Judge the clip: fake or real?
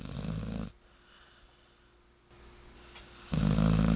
real